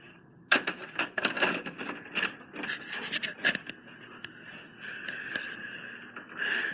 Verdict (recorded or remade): recorded